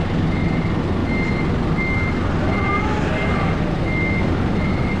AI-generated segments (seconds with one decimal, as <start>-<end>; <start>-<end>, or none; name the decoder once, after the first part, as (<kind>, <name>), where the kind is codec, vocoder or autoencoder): none